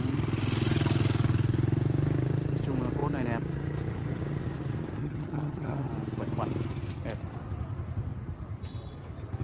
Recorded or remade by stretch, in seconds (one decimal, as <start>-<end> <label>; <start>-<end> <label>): 0.0-5.0 recorded; 5.0-5.9 remade; 5.9-9.4 recorded